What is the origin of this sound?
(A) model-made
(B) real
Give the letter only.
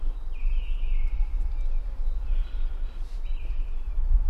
B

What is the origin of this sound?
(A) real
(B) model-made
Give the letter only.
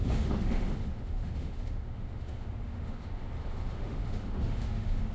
B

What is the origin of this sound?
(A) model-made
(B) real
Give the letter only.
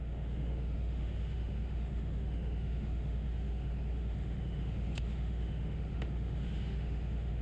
A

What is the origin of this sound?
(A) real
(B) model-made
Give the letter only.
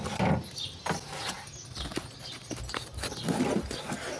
A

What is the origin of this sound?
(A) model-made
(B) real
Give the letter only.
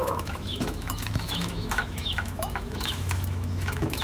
A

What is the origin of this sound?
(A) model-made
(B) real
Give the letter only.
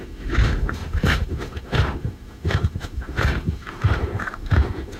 A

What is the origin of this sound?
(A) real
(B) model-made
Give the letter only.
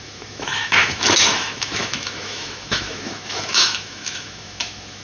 B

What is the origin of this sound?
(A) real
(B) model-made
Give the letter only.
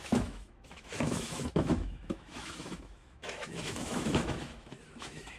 B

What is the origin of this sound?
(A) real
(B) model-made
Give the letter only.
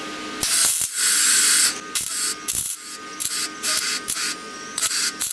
A